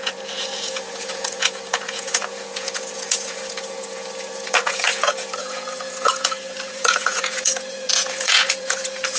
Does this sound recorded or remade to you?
remade